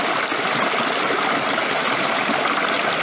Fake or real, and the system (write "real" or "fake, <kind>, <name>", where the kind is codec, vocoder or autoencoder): real